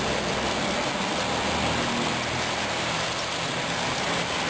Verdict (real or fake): real